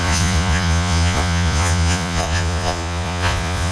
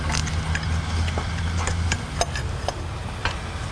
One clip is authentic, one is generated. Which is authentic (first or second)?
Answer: second